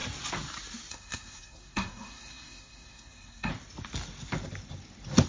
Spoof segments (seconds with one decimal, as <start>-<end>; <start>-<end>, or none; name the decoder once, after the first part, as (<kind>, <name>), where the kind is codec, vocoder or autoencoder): 0.9-3.5 (codec, SNAC)